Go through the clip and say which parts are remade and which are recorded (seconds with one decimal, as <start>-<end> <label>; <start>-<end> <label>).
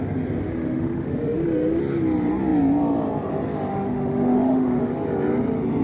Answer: 0.0-0.4 recorded; 0.4-1.8 remade; 1.8-3.7 recorded; 3.7-4.8 remade; 4.8-5.8 recorded